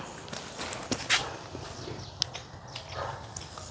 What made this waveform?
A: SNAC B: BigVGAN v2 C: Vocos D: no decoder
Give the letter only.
D